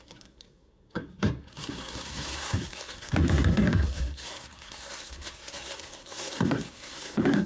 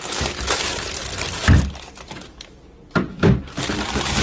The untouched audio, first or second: second